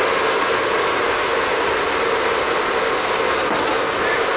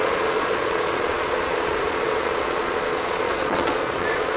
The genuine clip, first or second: first